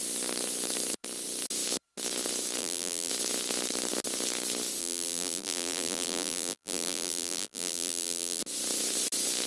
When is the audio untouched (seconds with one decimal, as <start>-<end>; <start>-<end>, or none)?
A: 0.0-2.6; 3.1-4.8; 8.4-9.5